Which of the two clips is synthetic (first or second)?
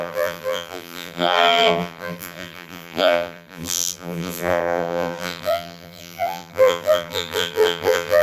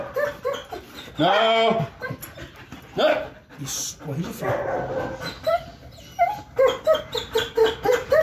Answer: first